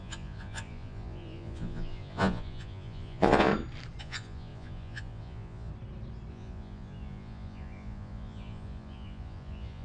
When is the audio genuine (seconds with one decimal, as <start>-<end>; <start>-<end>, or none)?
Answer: 3.5-4.0; 5.7-6.3